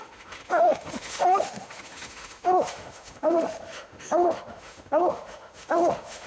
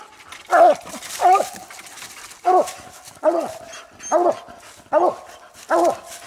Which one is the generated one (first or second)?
first